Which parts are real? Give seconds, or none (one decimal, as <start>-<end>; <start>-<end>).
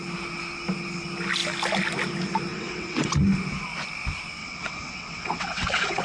0.0-2.5; 3.1-4.4